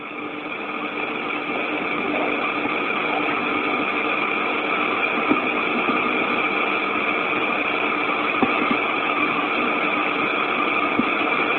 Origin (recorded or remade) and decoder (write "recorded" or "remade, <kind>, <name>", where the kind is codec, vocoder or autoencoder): recorded